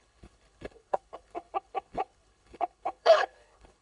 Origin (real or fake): fake